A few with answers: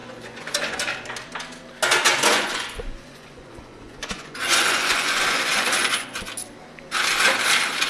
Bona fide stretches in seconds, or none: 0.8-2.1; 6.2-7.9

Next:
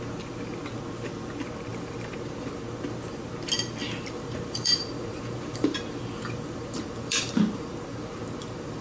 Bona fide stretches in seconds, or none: 0.0-1.7; 2.6-3.8